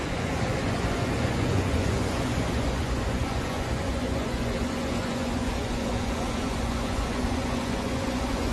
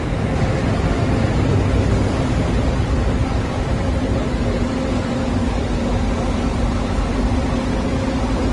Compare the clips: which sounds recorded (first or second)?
second